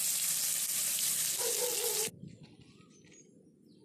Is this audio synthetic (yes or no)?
no